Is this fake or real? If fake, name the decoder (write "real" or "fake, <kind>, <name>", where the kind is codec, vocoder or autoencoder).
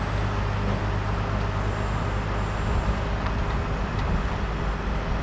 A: real